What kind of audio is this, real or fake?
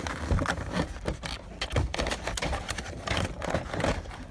real